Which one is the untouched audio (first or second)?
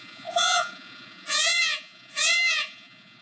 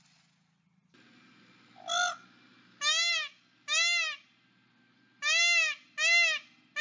second